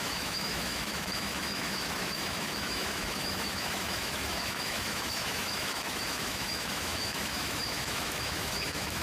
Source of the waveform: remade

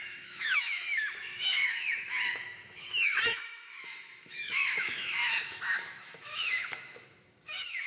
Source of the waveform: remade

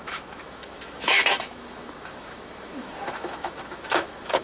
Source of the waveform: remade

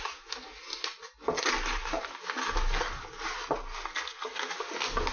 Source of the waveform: recorded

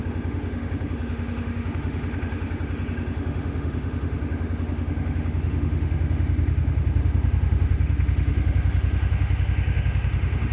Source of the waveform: remade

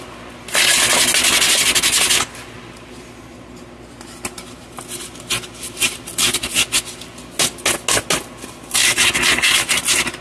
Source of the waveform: recorded